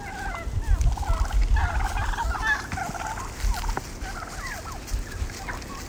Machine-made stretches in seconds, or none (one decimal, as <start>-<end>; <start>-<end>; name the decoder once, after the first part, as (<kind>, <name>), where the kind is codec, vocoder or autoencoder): none